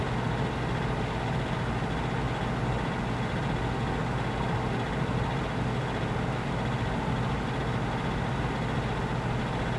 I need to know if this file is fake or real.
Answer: real